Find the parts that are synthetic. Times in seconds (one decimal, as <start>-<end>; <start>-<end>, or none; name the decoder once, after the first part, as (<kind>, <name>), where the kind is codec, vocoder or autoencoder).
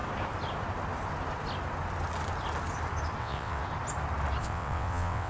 3.2-3.6 (vocoder, WaveNeXt); 4.4-5.3